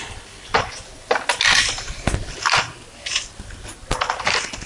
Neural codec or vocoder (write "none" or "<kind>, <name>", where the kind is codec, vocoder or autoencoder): none